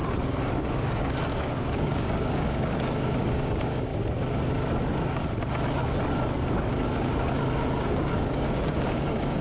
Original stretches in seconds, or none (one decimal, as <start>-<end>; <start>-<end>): 0.0-0.6; 3.9-7.8